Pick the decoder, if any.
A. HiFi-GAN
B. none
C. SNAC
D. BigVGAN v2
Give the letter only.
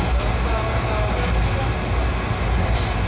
B